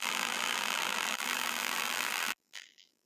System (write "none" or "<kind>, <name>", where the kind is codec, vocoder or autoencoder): vocoder, BigVGAN v2